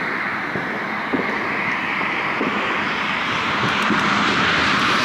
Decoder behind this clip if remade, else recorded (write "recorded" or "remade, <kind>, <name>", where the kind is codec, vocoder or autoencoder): remade, vocoder, BigVGAN v2